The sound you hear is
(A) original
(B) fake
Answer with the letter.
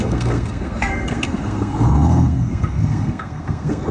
B